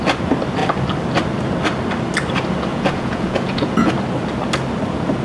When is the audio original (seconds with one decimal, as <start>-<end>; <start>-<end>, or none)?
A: 0.0-2.7; 3.9-5.2